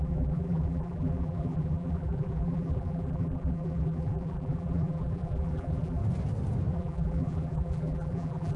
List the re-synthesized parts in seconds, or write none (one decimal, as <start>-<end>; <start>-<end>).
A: 0.0-6.0; 6.7-8.6